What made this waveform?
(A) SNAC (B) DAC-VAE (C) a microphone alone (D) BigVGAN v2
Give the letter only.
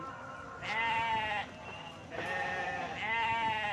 C